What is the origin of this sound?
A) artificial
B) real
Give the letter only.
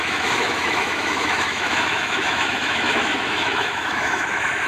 A